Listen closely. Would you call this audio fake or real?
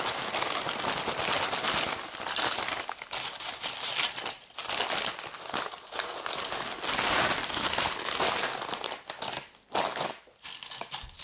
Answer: real